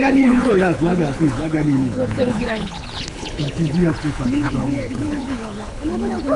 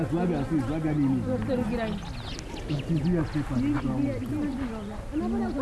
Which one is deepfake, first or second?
first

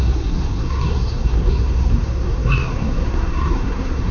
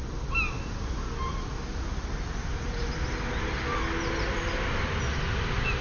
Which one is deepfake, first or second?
first